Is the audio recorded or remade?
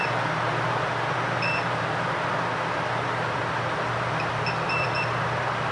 remade